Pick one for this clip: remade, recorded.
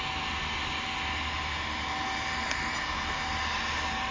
recorded